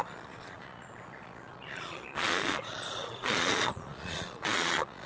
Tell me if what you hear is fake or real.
fake